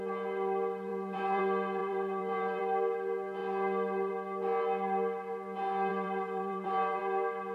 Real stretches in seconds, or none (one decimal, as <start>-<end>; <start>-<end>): 0.0-0.9; 1.4-1.8; 2.6-5.9; 7.0-7.5